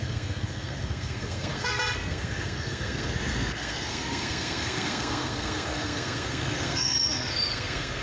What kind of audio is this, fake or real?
fake